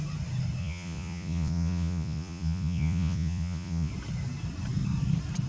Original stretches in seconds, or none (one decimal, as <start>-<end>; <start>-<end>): 0.0-0.6; 3.9-5.5